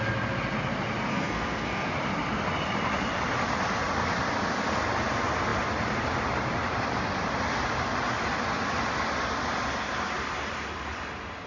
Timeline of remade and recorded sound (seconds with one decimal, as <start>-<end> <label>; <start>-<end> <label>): 0.0-1.1 recorded; 1.1-1.9 remade; 1.9-11.5 recorded